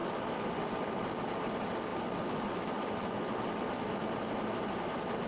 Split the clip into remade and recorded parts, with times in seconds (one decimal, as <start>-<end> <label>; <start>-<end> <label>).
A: 0.0-5.3 recorded

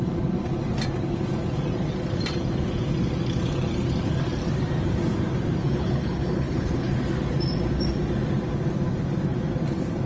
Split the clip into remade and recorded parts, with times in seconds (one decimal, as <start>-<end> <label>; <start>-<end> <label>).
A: 0.0-5.6 recorded; 5.6-6.9 remade; 6.9-10.1 recorded

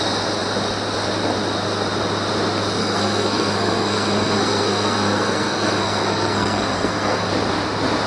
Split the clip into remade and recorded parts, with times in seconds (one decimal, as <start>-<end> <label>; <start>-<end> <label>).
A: 0.0-2.8 recorded; 2.8-7.3 remade; 7.3-8.1 recorded

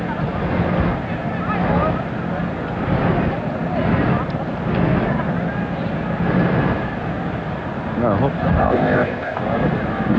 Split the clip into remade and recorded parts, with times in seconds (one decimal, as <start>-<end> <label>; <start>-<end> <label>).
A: 0.0-8.6 recorded; 8.6-9.4 remade; 9.4-10.2 recorded

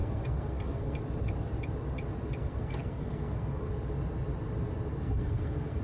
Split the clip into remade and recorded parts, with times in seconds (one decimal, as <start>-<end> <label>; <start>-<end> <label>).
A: 0.0-1.0 remade; 1.0-2.4 recorded; 2.4-3.7 remade; 3.7-4.9 recorded; 4.9-5.8 remade

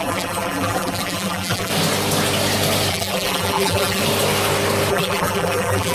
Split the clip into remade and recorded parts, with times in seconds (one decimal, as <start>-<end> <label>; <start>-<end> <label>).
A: 0.0-1.7 remade; 1.7-2.9 recorded; 2.9-4.0 remade; 4.0-4.9 recorded; 4.9-5.9 remade